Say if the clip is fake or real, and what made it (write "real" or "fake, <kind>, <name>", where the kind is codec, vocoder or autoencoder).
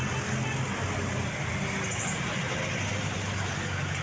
real